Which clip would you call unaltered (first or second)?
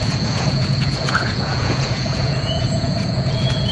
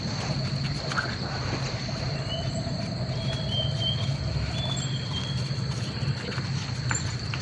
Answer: second